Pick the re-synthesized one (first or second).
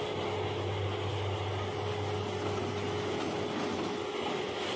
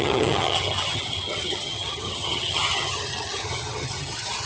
second